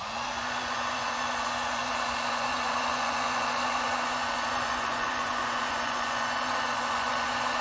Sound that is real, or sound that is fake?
fake